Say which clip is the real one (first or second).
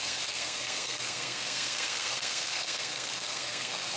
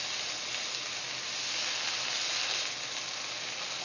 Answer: second